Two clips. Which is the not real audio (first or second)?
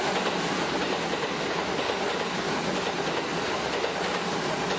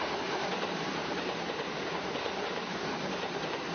second